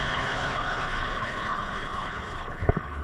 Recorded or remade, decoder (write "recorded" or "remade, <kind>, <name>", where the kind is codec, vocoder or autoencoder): remade, codec, HILCodec